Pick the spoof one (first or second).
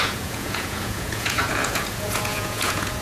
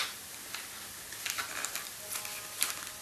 first